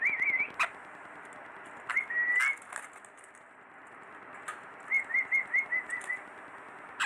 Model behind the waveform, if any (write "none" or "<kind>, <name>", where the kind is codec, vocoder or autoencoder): none